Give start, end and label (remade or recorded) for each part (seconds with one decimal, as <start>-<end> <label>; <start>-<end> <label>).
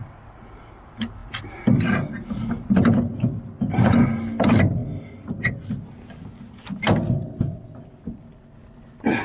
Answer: 0.0-9.2 recorded